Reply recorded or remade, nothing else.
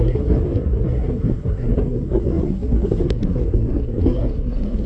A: remade